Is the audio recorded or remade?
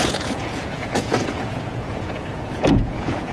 remade